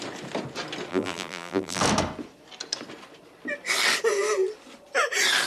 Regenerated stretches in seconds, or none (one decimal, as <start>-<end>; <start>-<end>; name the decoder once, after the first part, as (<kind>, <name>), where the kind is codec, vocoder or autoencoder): 0.9-1.8 (vocoder, BigVGAN v2)